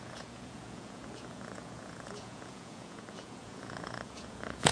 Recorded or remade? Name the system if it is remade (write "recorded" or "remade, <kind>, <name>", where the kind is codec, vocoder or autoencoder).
remade, vocoder, Vocos